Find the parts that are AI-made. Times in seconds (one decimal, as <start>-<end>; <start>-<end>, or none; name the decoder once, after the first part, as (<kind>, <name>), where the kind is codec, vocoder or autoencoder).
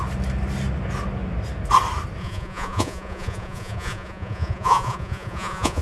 2.2-5.8 (vocoder, Vocos)